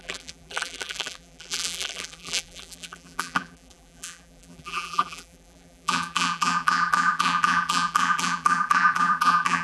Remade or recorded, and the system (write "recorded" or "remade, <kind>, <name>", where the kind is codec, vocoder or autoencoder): remade, vocoder, BigVGAN v2